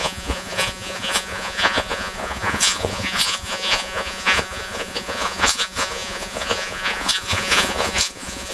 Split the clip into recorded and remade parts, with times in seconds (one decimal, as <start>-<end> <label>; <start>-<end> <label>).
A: 0.0-8.5 remade